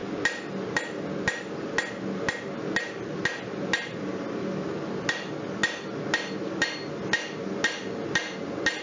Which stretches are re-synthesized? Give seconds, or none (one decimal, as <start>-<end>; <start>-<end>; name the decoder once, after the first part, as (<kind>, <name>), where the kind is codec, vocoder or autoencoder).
none